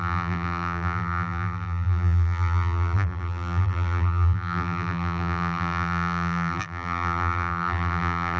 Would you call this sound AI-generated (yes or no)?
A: yes